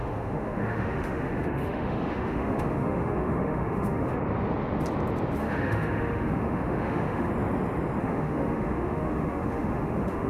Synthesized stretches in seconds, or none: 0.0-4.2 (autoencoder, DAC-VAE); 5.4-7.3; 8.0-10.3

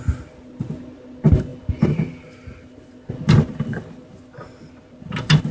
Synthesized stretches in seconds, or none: none

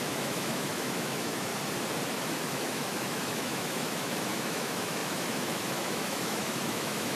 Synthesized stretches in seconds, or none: 0.0-1.5 (autoencoder, DAC-VAE); 2.1-7.2

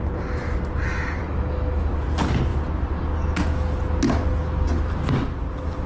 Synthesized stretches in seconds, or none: 1.2-1.9 (autoencoder, DAC-VAE)

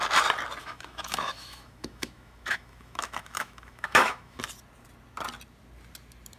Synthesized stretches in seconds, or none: 0.6-4.4 (autoencoder, DAC-VAE)